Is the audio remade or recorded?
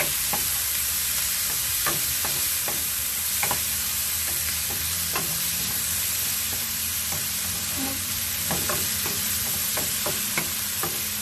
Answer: remade